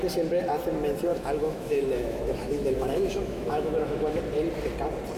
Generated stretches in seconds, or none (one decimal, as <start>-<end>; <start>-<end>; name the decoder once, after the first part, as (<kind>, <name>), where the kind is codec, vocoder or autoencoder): 1.1-4.2 (autoencoder, DAC-VAE)